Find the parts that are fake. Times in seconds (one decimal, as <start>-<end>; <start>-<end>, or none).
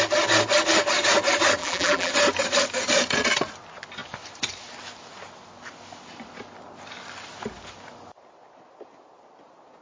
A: 1.6-2.1